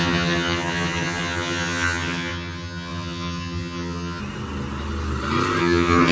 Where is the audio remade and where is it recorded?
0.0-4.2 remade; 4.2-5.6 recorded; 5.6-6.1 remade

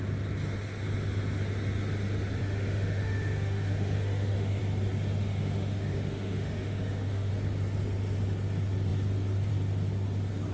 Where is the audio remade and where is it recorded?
0.0-2.4 recorded; 2.4-4.6 remade; 4.6-5.2 recorded; 5.2-7.3 remade; 7.3-10.5 recorded